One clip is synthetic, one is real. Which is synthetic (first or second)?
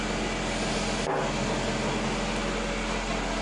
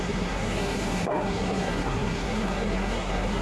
second